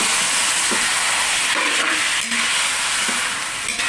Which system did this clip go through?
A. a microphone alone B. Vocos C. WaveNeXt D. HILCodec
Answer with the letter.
A